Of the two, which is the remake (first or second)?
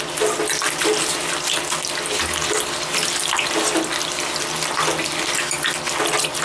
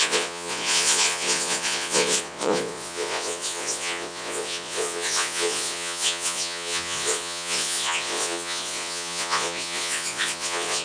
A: second